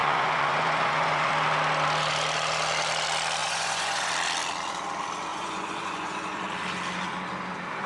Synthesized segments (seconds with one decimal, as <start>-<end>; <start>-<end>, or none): 0.0-1.3; 3.4-4.1; 5.3-6.4